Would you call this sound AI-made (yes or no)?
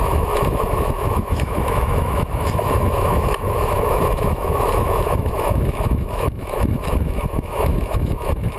yes